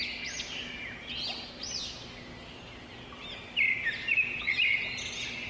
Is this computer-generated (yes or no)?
no